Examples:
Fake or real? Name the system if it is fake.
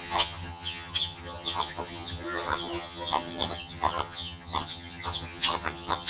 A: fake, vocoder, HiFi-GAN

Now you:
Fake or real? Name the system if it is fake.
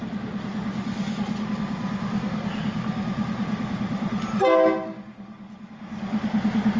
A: real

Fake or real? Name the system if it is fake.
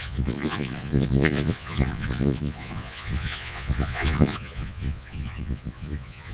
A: fake, vocoder, Vocos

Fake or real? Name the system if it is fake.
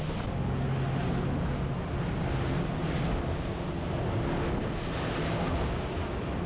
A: real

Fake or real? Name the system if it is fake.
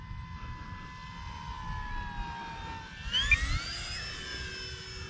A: real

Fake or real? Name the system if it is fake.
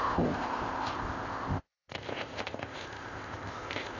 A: fake, codec, ZipCodec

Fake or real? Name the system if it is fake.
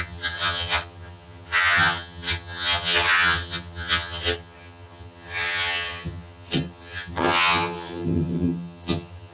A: fake, vocoder, HiFi-GAN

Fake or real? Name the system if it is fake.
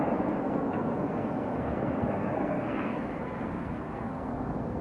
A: fake, codec, SNAC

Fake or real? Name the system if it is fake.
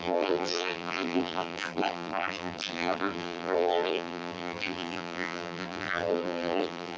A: fake, vocoder, BigVGAN v2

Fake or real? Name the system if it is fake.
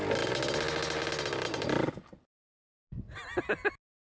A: real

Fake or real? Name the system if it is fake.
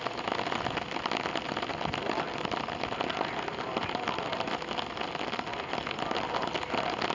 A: real